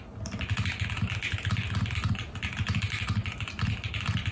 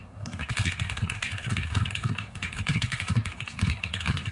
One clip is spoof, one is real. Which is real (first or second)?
first